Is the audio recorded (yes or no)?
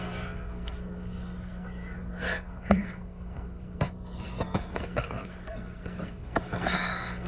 no